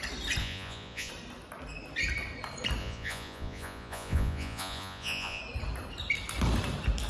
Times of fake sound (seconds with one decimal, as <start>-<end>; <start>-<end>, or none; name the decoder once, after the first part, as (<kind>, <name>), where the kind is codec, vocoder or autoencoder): 0.4-1.1 (vocoder, Vocos); 2.8-5.4